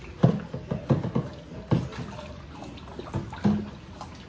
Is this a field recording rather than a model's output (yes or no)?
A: yes